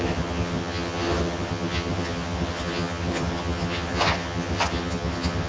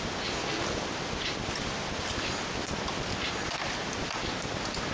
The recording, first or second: second